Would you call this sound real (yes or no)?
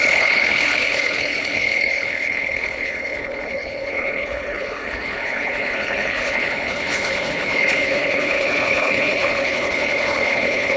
no